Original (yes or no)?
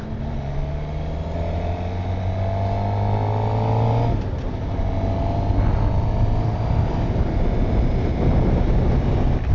yes